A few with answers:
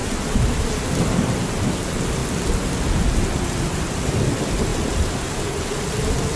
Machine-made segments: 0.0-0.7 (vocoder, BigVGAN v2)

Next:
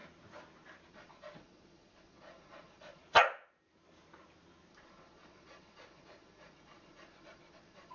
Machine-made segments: 0.9-3.0 (vocoder, Vocos); 4.7-7.9

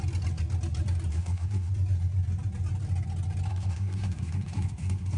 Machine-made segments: 1.1-1.7 (codec, SNAC); 3.5-5.2

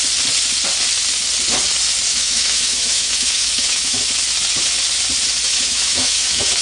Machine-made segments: 2.1-4.1 (autoencoder, DAC-VAE); 5.5-6.6

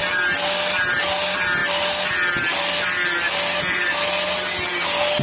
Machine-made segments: none

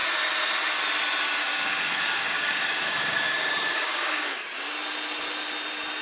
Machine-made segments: 1.4-4.4 (codec, DAC)

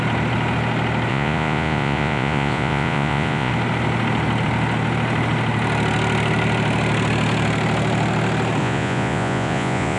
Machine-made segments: 1.1-3.5 (vocoder, Vocos); 8.6-10.0

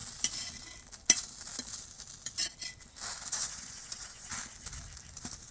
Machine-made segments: 3.3-4.3 (vocoder, Vocos)